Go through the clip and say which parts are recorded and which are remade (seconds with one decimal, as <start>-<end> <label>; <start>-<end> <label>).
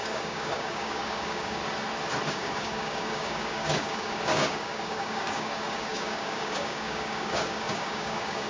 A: 0.0-1.6 remade; 1.6-2.3 recorded; 2.3-8.5 remade